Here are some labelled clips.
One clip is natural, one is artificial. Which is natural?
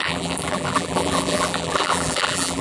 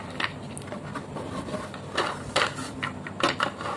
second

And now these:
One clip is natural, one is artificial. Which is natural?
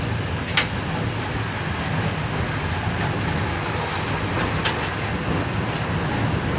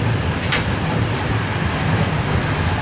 first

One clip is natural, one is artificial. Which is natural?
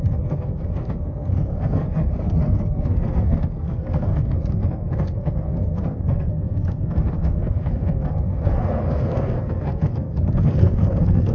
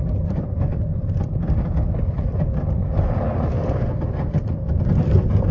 second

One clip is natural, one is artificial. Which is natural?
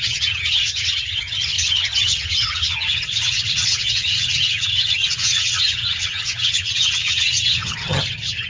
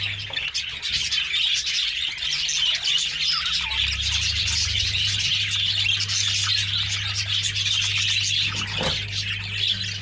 second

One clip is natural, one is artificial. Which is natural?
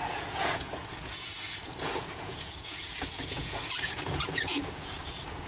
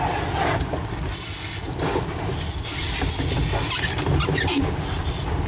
second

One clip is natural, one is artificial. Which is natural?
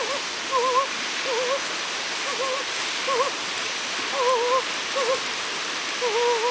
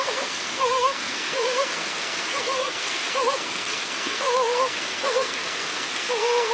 first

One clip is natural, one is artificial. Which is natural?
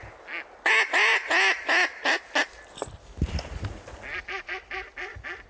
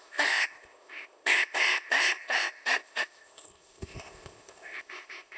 first